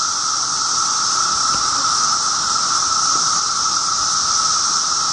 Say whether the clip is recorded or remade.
recorded